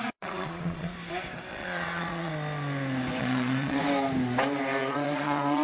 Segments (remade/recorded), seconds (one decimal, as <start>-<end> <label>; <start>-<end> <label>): 0.0-0.9 remade; 0.9-1.5 recorded; 1.5-2.3 remade; 2.3-3.2 recorded; 3.2-3.8 remade; 3.8-4.8 recorded; 4.8-5.6 remade